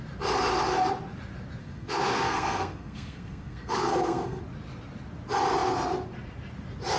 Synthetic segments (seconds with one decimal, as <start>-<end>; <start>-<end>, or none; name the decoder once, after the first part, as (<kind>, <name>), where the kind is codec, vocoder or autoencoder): 1.6-4.4 (codec, SNAC)